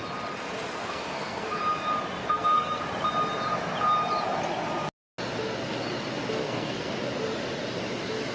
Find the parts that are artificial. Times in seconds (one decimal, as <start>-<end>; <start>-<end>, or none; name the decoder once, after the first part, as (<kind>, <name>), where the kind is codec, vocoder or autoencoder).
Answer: 0.8-1.6 (codec, SNAC); 2.2-2.8; 6.4-6.9